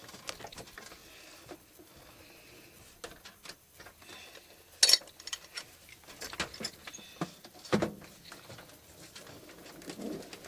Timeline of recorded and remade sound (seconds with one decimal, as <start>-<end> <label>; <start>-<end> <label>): 0.0-10.5 recorded